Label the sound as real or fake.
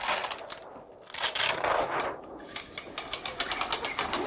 real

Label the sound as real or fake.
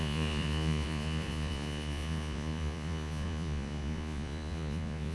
fake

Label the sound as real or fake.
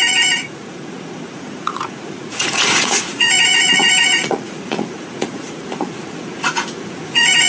fake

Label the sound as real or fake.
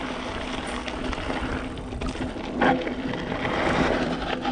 real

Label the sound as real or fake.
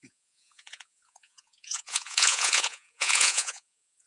fake